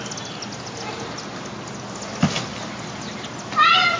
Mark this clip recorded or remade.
recorded